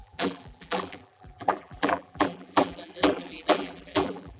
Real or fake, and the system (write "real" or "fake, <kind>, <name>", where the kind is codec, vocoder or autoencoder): fake, vocoder, BigVGAN v2